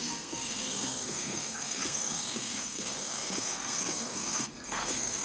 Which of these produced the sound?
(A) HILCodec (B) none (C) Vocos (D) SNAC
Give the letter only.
D